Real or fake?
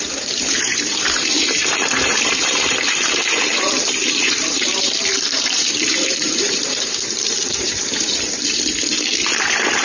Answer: fake